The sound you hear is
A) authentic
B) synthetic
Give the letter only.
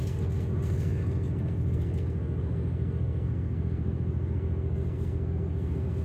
B